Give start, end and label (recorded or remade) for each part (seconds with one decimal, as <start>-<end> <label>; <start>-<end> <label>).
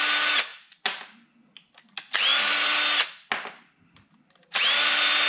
0.0-5.3 recorded